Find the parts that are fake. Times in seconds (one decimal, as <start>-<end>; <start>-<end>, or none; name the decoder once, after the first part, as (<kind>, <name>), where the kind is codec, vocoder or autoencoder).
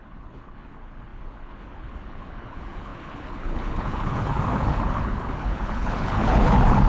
0.0-6.9 (codec, HILCodec)